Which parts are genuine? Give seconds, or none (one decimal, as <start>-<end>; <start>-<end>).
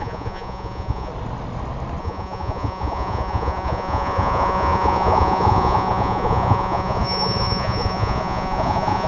1.1-2.0